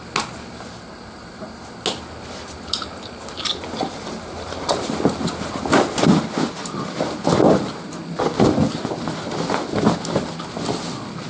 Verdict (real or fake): real